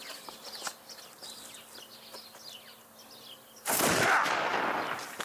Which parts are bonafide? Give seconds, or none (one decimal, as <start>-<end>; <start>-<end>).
0.0-5.2